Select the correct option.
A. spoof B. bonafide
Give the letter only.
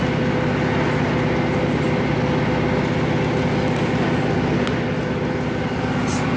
B